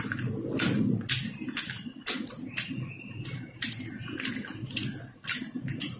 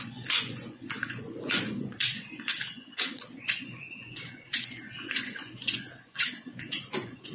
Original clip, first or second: first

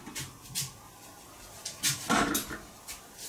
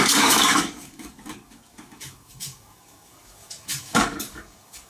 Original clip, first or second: first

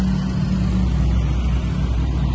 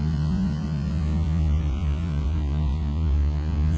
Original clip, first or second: first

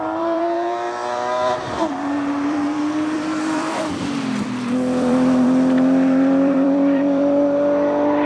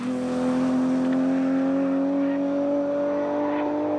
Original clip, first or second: second